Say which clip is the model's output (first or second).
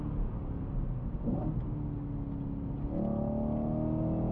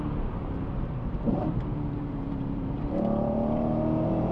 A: second